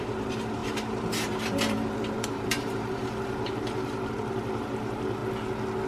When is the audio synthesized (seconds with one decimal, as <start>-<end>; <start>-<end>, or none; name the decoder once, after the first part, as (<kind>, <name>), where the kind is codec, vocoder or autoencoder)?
0.0-5.2 (vocoder, BigVGAN v2)